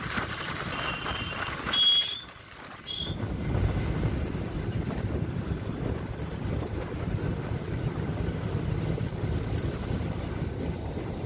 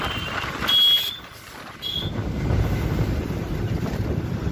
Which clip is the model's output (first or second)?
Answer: first